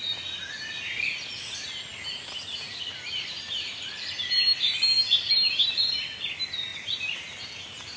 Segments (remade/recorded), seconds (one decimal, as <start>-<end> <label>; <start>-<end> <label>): 0.0-8.0 recorded